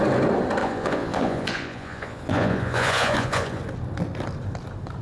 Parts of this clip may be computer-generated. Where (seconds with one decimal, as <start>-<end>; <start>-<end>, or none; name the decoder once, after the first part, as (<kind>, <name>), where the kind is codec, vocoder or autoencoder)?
0.6-3.6 (vocoder, Vocos)